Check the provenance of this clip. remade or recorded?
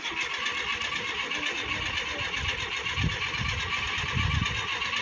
recorded